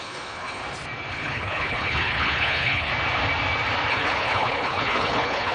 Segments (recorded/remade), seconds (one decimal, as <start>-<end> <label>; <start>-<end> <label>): 0.0-0.6 remade; 0.6-1.1 recorded; 1.1-2.9 remade; 2.9-3.9 recorded; 3.9-5.5 remade

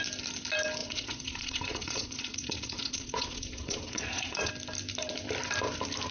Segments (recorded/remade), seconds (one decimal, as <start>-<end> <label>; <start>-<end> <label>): 0.0-0.8 recorded; 0.8-4.5 remade; 4.5-6.1 recorded

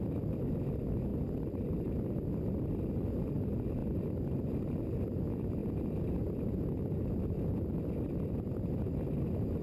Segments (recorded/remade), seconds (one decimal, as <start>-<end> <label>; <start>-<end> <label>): 0.0-1.1 recorded; 1.1-2.9 remade; 2.9-3.8 recorded; 3.8-4.8 remade; 4.8-9.6 recorded

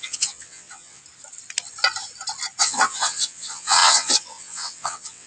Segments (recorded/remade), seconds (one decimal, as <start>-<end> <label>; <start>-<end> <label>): 0.0-1.0 remade; 1.0-2.6 recorded; 2.6-5.3 remade